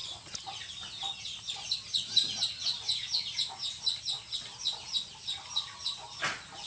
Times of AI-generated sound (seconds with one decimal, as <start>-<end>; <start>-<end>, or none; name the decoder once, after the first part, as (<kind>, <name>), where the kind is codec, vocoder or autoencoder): none